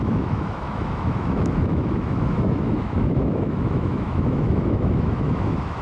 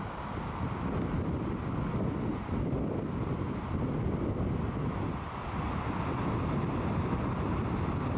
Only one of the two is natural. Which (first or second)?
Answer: second